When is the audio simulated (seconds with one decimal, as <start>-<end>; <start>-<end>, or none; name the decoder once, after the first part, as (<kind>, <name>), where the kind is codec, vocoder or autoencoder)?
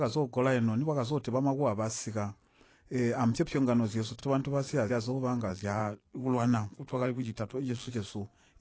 5.5-7.9 (vocoder, BigVGAN v2)